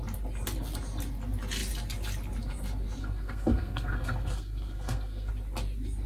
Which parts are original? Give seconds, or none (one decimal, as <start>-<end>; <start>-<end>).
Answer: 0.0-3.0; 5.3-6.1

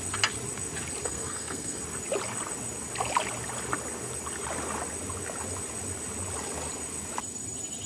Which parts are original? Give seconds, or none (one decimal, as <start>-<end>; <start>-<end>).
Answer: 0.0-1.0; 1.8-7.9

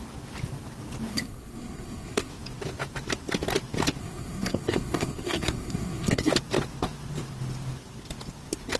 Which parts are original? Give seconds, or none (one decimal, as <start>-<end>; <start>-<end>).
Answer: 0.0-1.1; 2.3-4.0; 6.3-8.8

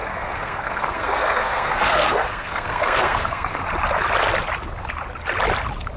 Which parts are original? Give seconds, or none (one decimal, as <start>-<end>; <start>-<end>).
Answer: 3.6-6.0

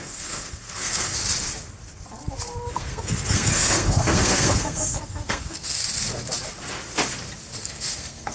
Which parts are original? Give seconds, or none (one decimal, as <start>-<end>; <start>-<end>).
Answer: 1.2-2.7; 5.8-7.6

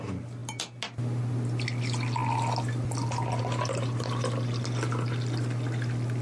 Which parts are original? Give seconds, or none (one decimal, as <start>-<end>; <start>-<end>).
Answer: 0.0-6.2

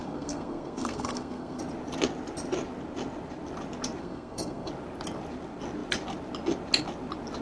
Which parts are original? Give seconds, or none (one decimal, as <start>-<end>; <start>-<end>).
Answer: 1.6-4.0; 4.7-7.4

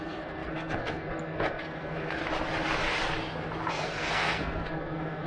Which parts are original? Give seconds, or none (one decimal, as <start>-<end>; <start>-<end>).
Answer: 2.2-3.7